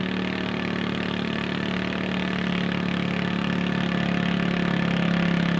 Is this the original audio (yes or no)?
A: yes